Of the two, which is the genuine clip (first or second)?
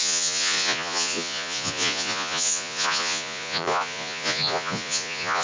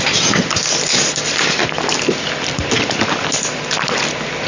second